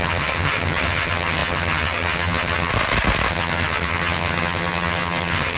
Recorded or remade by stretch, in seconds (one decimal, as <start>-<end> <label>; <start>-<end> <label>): 0.0-2.7 remade; 2.7-3.3 recorded; 3.3-5.6 remade